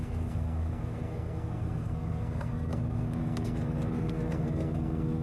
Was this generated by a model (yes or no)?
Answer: yes